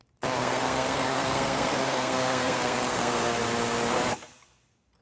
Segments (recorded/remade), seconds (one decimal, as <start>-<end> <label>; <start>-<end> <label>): 0.0-0.4 recorded; 0.4-3.4 remade; 3.4-5.0 recorded